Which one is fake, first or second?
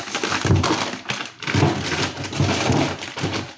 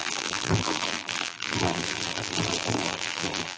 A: second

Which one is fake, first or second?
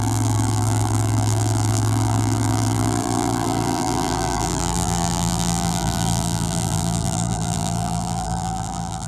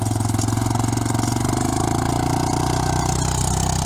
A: first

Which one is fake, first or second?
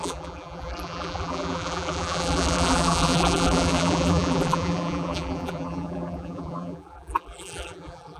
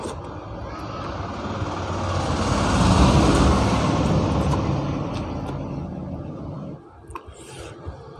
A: first